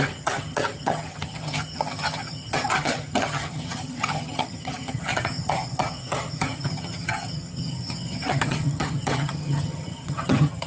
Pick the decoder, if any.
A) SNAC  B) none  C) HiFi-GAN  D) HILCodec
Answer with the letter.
C